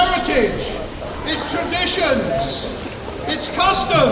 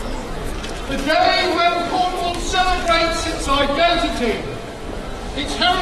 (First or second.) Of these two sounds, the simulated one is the second